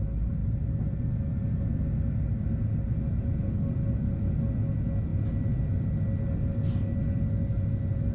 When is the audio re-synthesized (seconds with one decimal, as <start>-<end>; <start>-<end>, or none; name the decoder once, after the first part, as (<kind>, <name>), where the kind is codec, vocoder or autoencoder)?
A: 0.4-1.5 (vocoder, BigVGAN v2)